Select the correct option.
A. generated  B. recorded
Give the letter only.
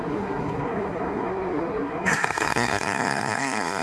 A